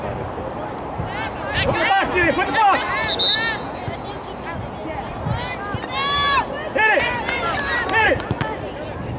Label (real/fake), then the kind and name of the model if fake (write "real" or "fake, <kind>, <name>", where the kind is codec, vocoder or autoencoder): real